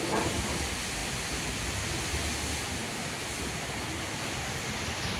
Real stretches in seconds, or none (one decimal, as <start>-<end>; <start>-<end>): 0.0-1.0; 1.9-5.2